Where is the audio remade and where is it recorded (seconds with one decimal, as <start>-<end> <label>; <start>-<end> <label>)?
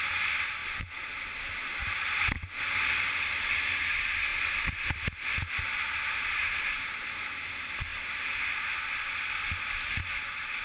0.0-10.6 recorded